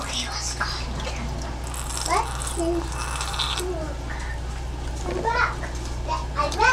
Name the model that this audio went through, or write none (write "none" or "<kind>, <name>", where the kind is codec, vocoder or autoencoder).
none